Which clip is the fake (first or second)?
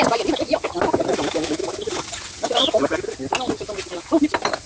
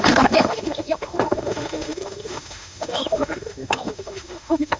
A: second